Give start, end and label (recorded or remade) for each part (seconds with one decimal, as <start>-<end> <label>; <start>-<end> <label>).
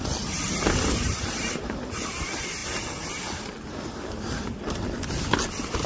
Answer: 0.0-5.9 recorded